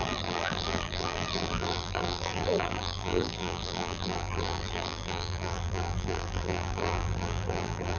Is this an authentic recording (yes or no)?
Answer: no